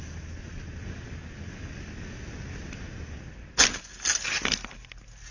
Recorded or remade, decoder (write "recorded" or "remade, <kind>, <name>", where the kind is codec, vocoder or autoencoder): recorded